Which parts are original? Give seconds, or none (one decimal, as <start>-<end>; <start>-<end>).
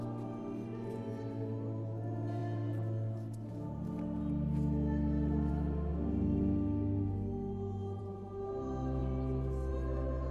0.0-10.3